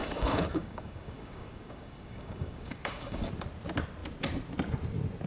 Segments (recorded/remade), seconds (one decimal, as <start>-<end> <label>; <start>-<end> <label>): 0.0-3.2 remade; 3.2-5.3 recorded